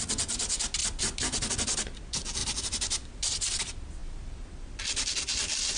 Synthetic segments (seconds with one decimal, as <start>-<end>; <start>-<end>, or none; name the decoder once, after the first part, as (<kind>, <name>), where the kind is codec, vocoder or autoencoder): 0.8-1.5 (vocoder, BigVGAN v2); 2.4-3.6